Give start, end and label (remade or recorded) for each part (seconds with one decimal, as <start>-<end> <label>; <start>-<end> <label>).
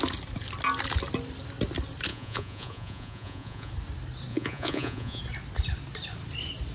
0.0-2.1 recorded; 2.1-3.7 remade; 3.7-4.3 recorded; 4.3-5.2 remade; 5.2-6.7 recorded